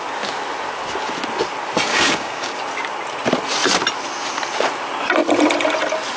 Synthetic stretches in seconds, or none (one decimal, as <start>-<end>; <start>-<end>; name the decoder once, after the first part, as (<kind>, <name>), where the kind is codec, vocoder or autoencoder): 1.9-2.6 (codec, DAC)